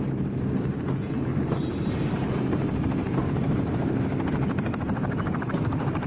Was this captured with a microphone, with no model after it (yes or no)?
no